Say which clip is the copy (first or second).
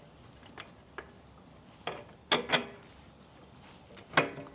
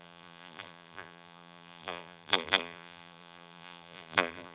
second